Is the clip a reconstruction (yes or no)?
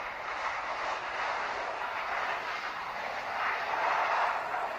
yes